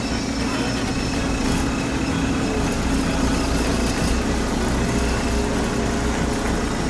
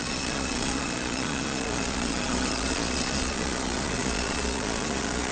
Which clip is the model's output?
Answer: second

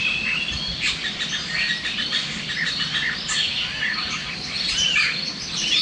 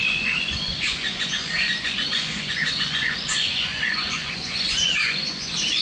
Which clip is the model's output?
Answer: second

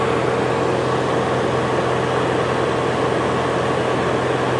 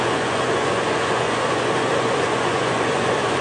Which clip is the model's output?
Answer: second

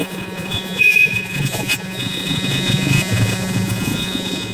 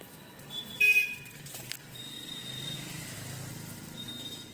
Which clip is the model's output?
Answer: first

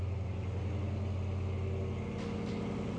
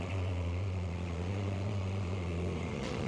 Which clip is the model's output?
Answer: second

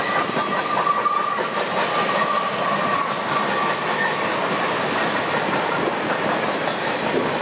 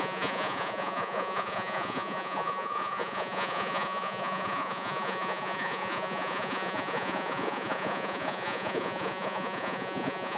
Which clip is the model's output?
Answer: second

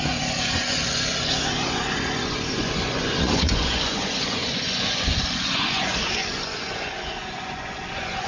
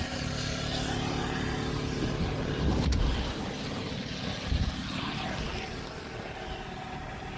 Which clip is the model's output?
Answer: first